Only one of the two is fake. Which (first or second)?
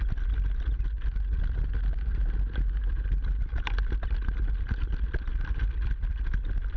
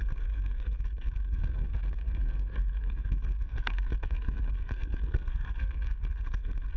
second